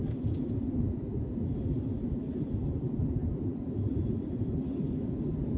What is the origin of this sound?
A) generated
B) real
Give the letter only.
B